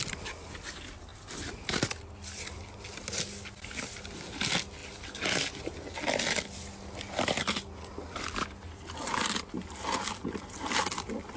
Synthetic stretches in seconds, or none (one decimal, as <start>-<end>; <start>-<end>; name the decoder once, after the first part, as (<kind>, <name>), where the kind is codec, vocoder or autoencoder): none

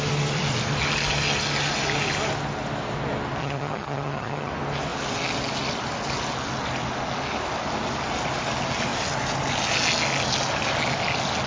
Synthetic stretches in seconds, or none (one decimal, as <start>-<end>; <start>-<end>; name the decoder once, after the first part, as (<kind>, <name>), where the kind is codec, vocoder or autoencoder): 3.4-4.5 (vocoder, HiFi-GAN)

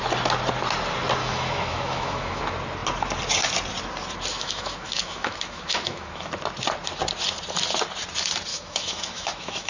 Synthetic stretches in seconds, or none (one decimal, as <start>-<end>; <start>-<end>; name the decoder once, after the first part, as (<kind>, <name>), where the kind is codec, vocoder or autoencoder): 1.2-2.4 (autoencoder, DAC-VAE); 4.3-6.3; 8.5-9.7